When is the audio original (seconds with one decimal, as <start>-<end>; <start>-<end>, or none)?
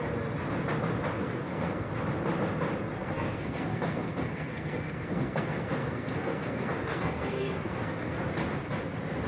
0.0-1.2; 1.9-3.0; 8.2-9.3